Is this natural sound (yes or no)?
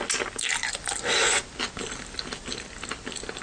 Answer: yes